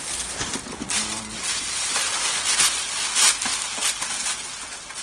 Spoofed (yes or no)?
no